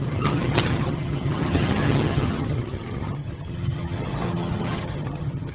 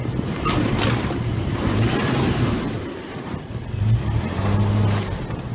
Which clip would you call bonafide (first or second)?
second